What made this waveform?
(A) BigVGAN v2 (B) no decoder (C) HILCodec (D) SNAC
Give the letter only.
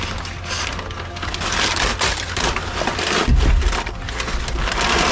B